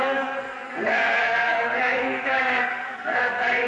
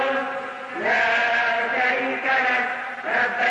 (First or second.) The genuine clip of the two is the second